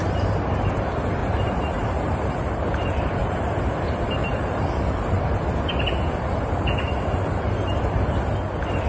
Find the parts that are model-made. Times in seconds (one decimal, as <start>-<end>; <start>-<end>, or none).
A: 1.2-3.6; 4.2-5.4